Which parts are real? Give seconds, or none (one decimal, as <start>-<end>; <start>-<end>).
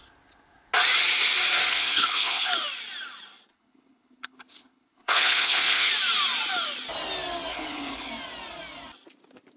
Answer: 0.0-1.7; 2.5-3.5; 5.9-7.5; 8.1-9.6